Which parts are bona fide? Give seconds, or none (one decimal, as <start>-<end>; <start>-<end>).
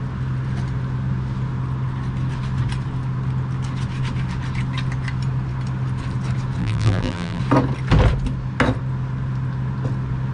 0.0-6.6; 7.4-10.3